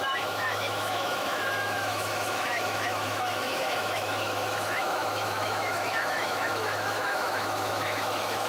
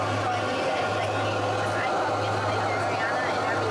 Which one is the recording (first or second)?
second